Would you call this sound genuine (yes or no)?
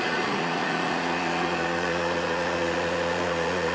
no